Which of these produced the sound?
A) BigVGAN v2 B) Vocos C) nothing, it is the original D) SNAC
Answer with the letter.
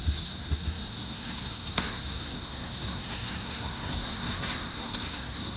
D